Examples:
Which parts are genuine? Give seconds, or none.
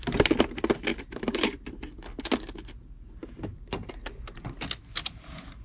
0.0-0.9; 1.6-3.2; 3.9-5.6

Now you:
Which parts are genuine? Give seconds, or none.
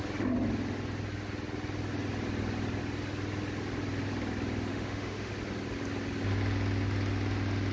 0.0-4.7; 5.3-7.7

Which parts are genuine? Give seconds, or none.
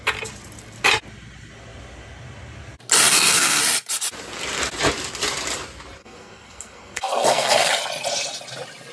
0.0-3.1; 3.6-6.0; 7.7-8.9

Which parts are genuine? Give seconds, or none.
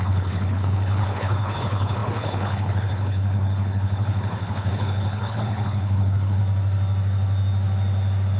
6.4-8.4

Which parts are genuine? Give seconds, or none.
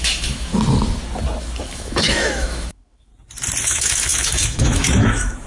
0.5-1.6; 3.1-3.6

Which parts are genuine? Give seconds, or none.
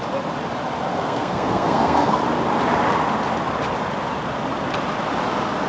0.0-0.9; 2.2-5.7